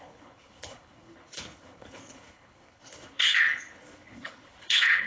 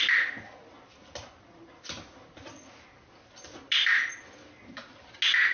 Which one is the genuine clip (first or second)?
second